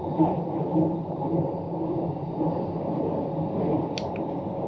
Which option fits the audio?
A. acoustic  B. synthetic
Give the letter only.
A